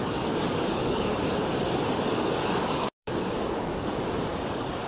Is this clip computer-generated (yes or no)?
yes